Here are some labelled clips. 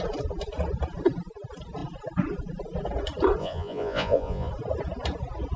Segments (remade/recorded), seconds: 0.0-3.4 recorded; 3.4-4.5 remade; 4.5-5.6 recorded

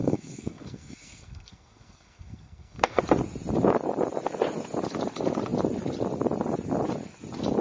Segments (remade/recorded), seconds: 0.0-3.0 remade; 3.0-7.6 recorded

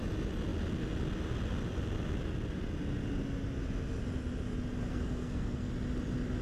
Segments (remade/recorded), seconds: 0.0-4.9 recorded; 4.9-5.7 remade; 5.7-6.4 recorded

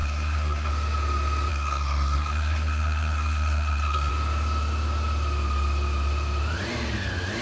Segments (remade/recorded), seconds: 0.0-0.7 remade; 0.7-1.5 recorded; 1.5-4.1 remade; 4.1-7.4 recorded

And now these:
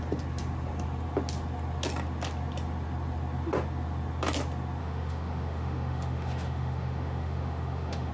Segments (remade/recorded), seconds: 0.0-4.8 recorded; 4.8-8.1 remade

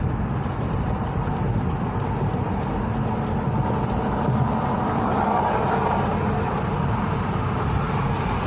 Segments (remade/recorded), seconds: 0.0-5.1 recorded; 5.1-5.7 remade; 5.7-8.5 recorded